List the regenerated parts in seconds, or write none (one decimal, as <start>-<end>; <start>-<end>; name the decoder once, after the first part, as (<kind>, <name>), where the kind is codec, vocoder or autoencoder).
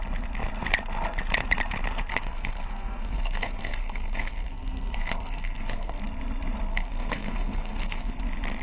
2.1-6.0 (codec, SNAC); 6.7-8.2